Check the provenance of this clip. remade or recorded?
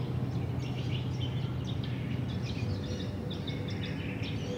recorded